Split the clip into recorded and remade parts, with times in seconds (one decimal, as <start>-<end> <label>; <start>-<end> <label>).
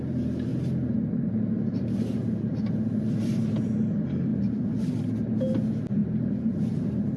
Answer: 0.0-4.3 recorded; 4.3-4.8 remade; 4.8-7.2 recorded